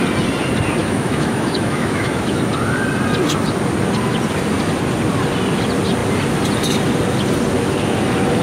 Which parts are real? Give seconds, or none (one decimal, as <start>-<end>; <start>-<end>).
0.0-0.8; 2.4-8.4